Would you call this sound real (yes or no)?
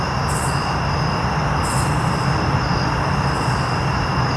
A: yes